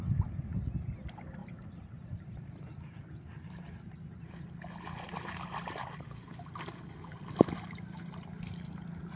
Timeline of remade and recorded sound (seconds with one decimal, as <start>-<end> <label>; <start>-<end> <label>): 0.0-9.2 recorded